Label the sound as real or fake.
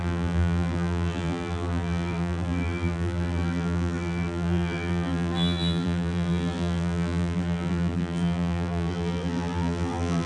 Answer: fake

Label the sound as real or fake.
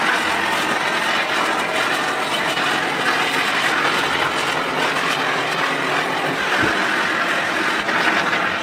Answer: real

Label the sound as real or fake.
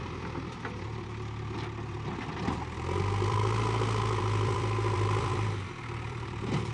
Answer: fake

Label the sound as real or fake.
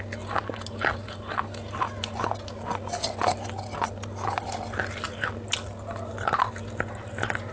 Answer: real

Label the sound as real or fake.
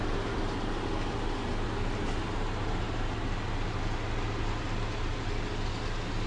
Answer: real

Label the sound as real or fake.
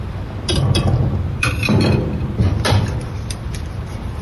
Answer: fake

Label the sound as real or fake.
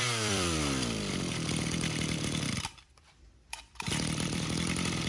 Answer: fake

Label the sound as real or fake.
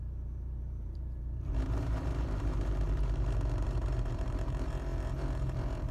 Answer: fake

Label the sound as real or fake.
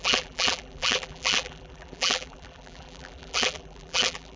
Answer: fake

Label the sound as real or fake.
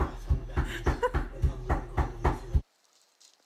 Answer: real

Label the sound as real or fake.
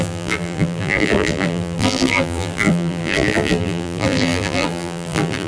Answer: fake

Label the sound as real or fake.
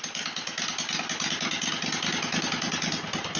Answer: real